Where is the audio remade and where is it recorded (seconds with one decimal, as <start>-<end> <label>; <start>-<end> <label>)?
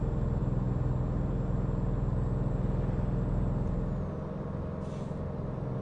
0.0-5.8 recorded